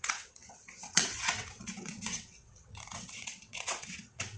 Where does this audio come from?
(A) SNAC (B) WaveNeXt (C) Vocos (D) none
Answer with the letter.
B